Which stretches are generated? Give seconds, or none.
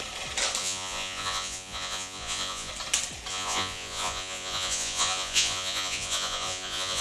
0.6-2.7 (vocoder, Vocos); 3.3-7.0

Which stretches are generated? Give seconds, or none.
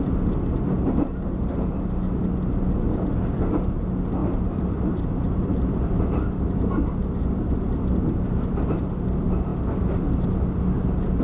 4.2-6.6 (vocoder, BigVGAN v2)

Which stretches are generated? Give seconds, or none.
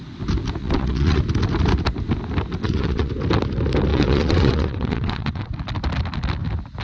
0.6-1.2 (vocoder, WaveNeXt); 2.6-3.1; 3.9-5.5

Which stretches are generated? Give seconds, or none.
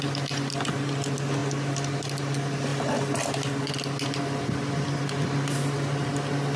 none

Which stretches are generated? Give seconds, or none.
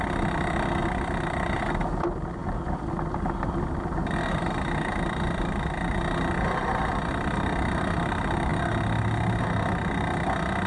none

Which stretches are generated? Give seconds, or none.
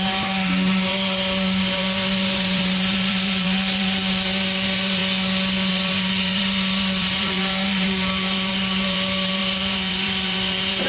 0.0-5.0 (vocoder, BigVGAN v2); 5.7-10.9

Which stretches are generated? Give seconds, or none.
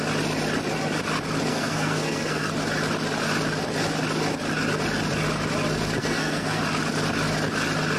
1.5-2.5 (codec, SNAC); 6.0-6.6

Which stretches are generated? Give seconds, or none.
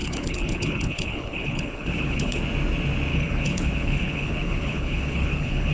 0.0-2.4 (codec, HILCodec); 3.1-5.7